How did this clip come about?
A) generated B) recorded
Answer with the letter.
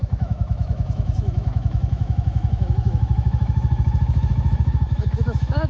A